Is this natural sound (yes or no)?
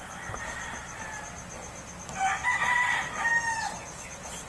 yes